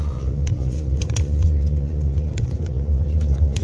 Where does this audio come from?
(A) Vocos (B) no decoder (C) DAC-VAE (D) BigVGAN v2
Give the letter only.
A